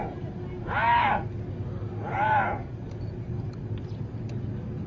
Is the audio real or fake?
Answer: real